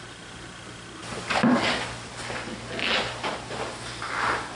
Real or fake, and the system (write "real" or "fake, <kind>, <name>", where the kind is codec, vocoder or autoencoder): real